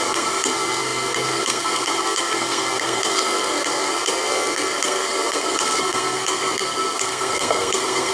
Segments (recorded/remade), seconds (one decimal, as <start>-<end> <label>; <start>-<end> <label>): 0.0-8.1 remade